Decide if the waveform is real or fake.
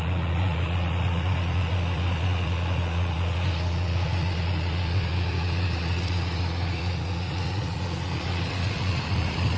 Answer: fake